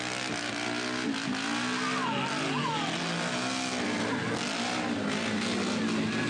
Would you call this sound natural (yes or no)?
yes